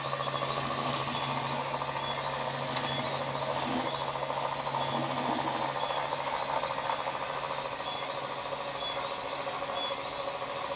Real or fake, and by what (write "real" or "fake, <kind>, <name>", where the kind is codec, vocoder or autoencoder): real